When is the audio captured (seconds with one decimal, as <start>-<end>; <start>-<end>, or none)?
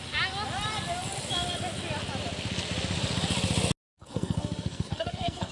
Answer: 0.0-3.9